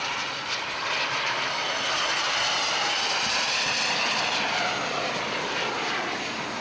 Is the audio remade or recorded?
recorded